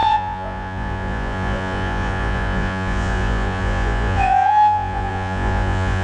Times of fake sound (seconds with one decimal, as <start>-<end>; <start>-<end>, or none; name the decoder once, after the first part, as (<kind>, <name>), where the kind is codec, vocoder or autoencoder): 0.0-6.0 (vocoder, Vocos)